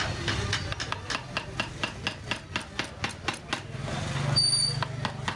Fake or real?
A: real